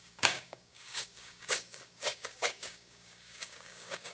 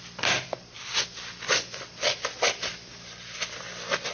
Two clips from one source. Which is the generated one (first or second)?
first